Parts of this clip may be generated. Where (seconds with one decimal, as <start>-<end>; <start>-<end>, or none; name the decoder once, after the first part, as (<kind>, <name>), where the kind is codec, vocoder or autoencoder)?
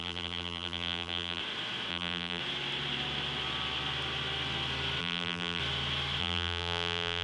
0.0-1.4 (vocoder, BigVGAN v2); 1.9-2.4; 5.0-5.6; 6.2-7.2